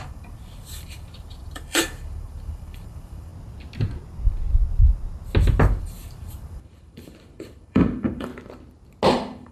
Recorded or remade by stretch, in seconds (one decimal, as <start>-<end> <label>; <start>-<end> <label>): 0.0-3.3 remade; 3.3-5.8 recorded; 5.8-8.3 remade; 8.3-9.1 recorded; 9.1-9.5 remade

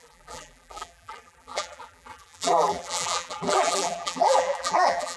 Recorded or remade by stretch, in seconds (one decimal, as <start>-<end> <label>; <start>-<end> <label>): 0.0-5.2 remade